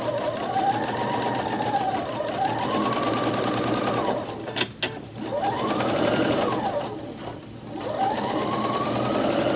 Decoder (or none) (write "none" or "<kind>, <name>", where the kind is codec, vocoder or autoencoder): none